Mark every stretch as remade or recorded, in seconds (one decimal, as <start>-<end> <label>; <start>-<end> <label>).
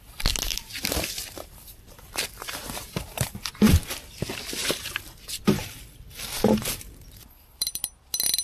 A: 0.0-0.5 recorded; 0.5-3.8 remade; 3.8-4.6 recorded; 4.6-7.8 remade; 7.8-8.4 recorded